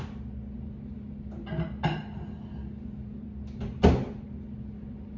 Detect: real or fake real